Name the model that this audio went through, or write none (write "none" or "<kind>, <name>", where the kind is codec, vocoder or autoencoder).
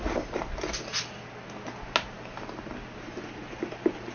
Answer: none